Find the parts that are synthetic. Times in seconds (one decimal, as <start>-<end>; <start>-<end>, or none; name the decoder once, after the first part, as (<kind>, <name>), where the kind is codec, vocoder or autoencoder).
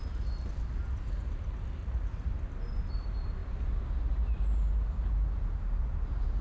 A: 1.8-2.3 (vocoder, Vocos)